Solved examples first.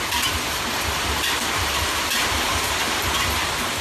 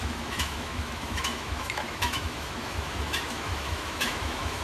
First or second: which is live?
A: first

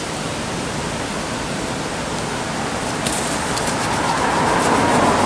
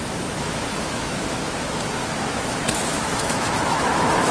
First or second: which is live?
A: first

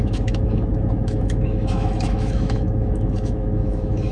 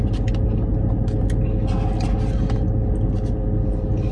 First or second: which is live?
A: second